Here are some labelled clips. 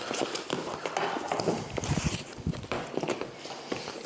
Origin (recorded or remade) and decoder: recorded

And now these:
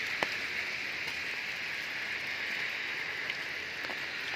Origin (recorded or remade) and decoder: recorded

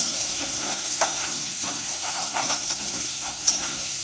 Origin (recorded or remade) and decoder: remade, codec, SNAC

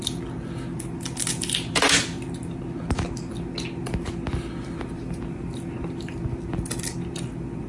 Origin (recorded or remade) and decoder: recorded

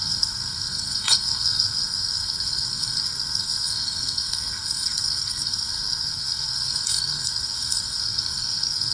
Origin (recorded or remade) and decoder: remade, codec, SNAC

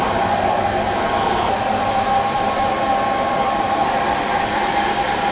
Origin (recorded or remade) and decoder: recorded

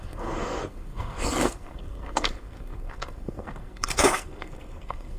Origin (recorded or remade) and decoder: remade, codec, SNAC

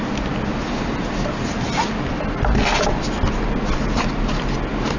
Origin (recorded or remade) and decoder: recorded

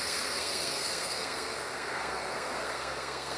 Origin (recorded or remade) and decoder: remade, codec, SNAC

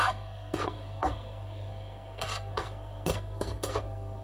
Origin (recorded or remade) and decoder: remade, codec, SNAC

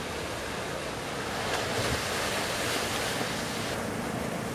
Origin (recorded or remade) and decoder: recorded